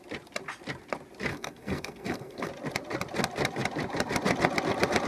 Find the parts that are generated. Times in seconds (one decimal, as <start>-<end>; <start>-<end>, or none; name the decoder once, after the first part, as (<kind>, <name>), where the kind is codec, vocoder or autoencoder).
1.3-2.5 (codec, SNAC)